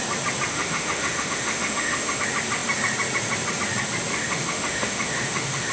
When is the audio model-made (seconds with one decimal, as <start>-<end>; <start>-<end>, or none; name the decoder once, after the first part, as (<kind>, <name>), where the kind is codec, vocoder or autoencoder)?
0.5-2.2 (autoencoder, DAC-VAE); 4.1-5.7